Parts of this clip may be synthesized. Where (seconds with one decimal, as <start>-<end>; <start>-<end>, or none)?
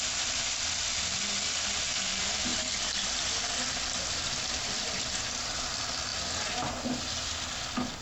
none